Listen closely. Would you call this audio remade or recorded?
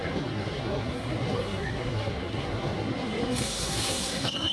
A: remade